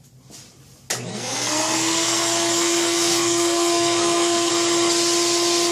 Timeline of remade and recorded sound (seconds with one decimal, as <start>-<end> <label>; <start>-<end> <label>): 0.0-1.1 recorded; 1.1-4.5 remade; 4.5-5.7 recorded